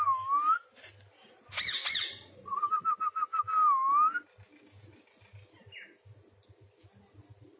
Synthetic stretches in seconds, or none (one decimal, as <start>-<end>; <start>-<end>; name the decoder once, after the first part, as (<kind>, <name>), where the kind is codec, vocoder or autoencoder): 1.2-2.6 (vocoder, Vocos)